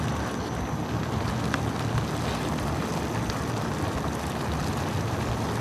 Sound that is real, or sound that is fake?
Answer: real